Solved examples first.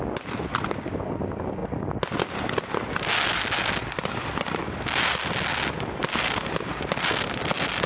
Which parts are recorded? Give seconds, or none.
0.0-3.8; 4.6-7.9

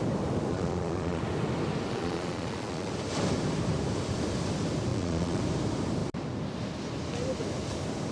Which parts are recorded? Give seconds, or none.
0.0-0.5; 1.2-1.9; 2.9-4.9; 5.4-8.1

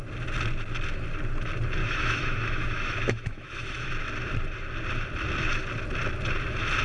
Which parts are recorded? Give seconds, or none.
0.0-1.8; 3.9-6.8

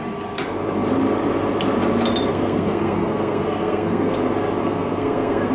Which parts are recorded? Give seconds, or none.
0.0-2.3; 4.1-4.6

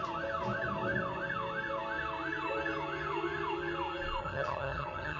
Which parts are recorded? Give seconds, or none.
0.0-4.2